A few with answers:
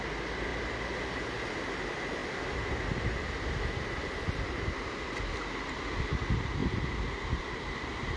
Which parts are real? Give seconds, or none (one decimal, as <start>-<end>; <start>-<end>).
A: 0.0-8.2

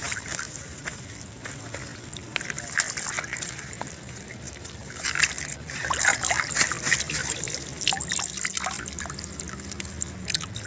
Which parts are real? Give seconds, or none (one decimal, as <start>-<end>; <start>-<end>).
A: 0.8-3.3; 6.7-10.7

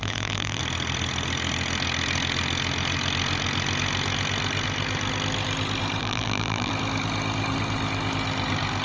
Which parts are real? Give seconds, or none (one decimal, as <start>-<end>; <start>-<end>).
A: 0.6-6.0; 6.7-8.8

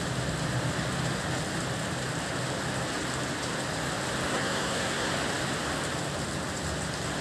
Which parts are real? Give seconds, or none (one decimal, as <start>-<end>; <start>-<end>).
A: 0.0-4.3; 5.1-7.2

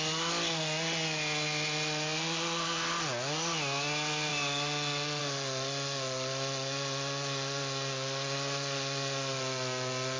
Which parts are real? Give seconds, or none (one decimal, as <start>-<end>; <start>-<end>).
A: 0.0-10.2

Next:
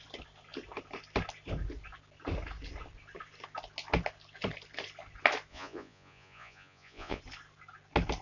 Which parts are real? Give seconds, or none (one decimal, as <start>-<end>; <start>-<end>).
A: 0.0-5.5; 7.2-8.2